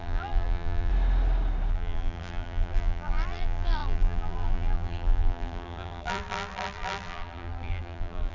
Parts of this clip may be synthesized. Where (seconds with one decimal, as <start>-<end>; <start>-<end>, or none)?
0.0-0.9; 1.7-8.3

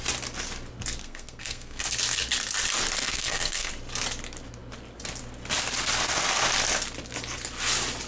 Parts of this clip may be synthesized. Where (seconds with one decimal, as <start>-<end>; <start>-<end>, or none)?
1.0-1.8; 3.0-3.7

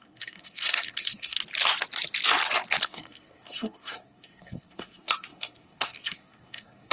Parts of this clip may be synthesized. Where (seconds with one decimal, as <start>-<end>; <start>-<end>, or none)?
0.0-1.4; 2.8-6.9

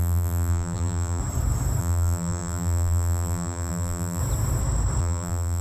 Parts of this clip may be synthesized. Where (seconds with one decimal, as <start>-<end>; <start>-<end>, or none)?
0.0-1.2; 1.8-4.2; 5.0-5.6

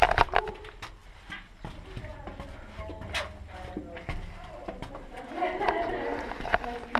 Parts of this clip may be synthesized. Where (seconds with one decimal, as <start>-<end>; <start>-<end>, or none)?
none